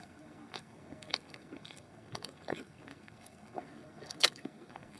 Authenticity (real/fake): fake